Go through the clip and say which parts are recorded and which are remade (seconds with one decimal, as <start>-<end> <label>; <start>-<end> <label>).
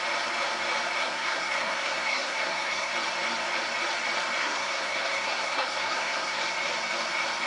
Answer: 0.0-1.0 recorded; 1.0-2.9 remade; 2.9-4.4 recorded; 4.4-6.4 remade; 6.4-7.5 recorded